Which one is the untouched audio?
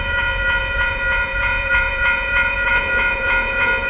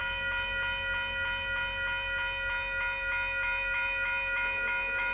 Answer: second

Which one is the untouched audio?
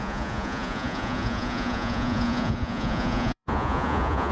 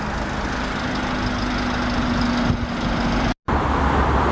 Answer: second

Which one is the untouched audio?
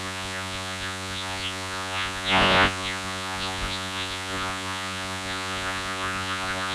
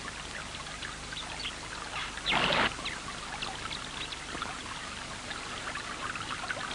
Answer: second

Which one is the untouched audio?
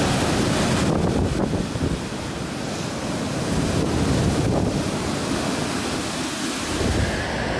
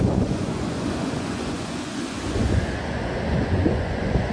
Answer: first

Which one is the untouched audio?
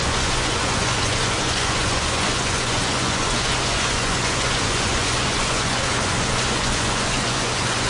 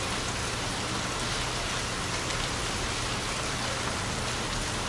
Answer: second